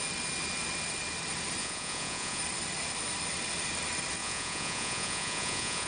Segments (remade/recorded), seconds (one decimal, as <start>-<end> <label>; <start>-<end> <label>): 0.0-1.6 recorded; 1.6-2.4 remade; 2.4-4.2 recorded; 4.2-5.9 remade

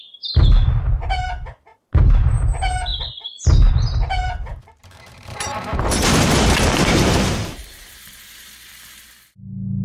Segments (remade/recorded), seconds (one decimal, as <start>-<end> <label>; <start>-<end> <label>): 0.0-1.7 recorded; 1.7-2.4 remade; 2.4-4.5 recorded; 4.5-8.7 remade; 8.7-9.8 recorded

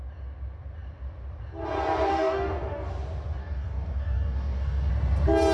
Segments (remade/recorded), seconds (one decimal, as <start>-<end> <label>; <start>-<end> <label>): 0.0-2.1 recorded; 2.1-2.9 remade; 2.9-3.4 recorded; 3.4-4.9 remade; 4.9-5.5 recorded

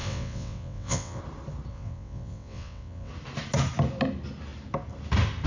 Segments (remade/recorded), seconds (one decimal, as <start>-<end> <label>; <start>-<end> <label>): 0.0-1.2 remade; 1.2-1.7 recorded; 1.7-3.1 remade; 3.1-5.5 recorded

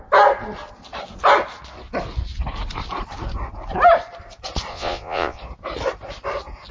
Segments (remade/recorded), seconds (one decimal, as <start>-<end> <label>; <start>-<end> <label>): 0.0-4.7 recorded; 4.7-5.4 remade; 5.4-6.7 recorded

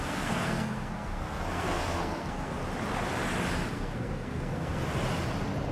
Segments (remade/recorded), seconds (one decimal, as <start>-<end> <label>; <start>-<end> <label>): 0.0-2.6 remade; 2.6-3.7 recorded; 3.7-4.8 remade; 4.8-5.7 recorded

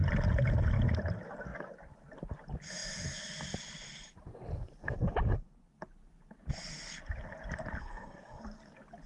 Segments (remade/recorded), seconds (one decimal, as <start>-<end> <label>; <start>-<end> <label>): 0.0-7.8 recorded; 7.8-8.4 remade; 8.4-9.1 recorded

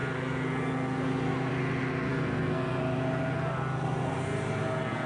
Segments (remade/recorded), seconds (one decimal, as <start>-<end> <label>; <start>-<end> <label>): 0.0-2.1 recorded; 2.1-2.8 remade; 2.8-5.1 recorded